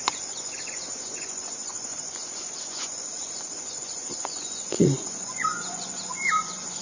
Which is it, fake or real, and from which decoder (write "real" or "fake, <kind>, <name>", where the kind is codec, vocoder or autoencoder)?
fake, vocoder, Vocos